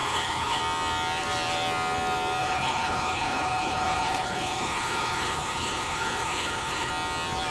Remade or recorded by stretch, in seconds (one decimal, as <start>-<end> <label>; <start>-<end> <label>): 0.0-0.6 remade; 0.6-2.4 recorded; 2.4-6.9 remade; 6.9-7.5 recorded